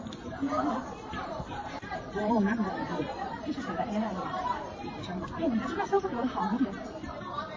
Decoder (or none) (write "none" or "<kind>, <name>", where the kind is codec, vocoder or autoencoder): vocoder, BigVGAN v2